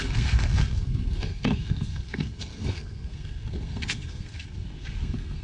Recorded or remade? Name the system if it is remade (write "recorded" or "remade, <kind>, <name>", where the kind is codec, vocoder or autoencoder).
remade, codec, SNAC